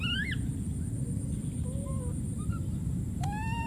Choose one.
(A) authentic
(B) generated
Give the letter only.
A